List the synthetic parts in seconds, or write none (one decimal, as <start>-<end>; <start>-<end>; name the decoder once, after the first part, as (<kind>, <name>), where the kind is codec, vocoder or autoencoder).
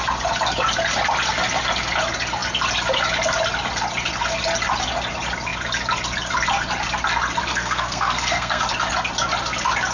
7.5-8.6 (codec, SNAC)